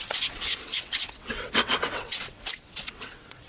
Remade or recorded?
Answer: remade